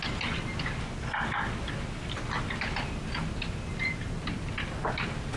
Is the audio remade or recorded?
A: recorded